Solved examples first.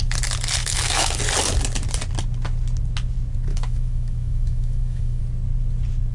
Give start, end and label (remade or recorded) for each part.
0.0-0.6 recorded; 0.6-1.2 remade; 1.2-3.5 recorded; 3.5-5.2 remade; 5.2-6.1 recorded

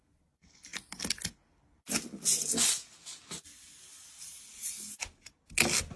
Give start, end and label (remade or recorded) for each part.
0.0-6.0 recorded

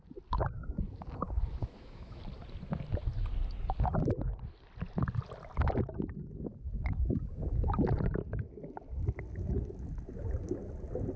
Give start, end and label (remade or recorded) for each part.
0.0-1.6 recorded; 1.6-2.2 remade; 2.2-11.2 recorded

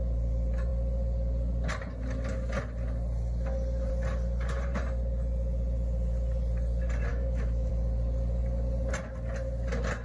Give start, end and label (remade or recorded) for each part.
0.0-7.1 recorded; 7.1-7.7 remade; 7.7-10.0 recorded

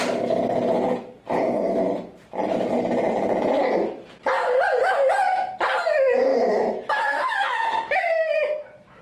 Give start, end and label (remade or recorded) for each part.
0.0-6.3 recorded; 6.3-8.4 remade; 8.4-9.0 recorded